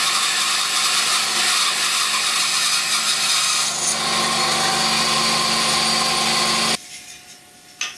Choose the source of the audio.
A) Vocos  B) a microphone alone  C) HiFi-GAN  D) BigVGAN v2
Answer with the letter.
B